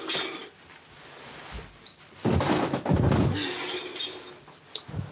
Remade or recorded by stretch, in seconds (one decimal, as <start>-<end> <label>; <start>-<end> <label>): 0.0-5.1 recorded

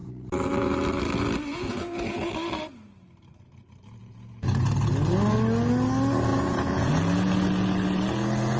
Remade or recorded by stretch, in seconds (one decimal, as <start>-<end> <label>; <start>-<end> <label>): 0.0-1.5 recorded; 1.5-2.3 remade; 2.3-4.0 recorded; 4.0-4.9 remade; 4.9-6.3 recorded; 6.3-6.9 remade; 6.9-8.6 recorded

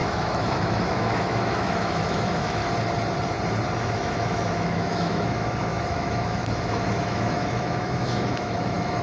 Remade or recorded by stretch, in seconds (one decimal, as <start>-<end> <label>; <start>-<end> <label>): 0.0-2.6 remade; 2.6-3.8 recorded; 3.8-9.0 remade

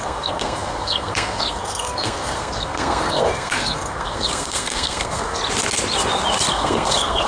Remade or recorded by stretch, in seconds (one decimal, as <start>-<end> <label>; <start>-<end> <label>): 0.0-5.4 remade; 5.4-6.5 recorded; 6.5-7.3 remade

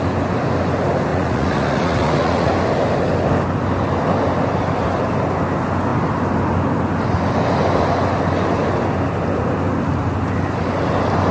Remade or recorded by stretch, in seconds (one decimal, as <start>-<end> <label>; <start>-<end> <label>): 0.0-1.1 recorded; 1.1-2.5 remade; 2.5-11.3 recorded